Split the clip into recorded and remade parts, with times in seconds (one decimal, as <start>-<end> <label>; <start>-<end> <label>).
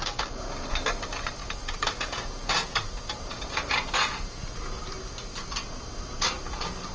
0.0-1.4 recorded; 1.4-4.8 remade; 4.8-6.9 recorded